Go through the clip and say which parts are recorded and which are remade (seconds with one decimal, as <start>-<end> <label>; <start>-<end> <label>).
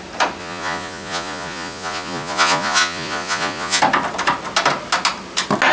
0.0-0.4 recorded; 0.4-3.8 remade; 3.8-5.7 recorded